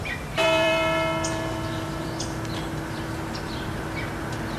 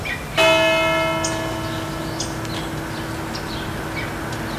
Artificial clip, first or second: first